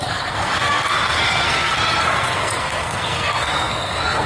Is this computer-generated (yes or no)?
yes